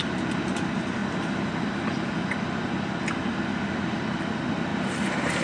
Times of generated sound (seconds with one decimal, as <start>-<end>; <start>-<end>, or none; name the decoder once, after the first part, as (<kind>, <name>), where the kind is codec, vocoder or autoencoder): none